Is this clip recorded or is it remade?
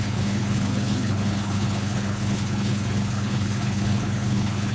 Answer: remade